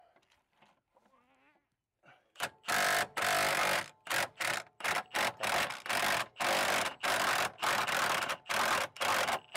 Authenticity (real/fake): real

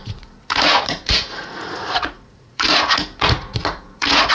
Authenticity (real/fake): fake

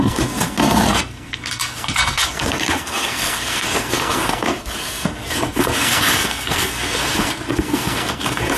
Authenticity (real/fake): fake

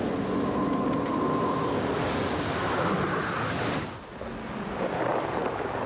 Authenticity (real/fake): real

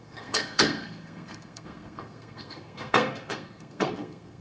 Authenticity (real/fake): fake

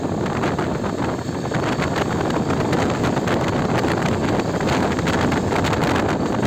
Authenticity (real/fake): real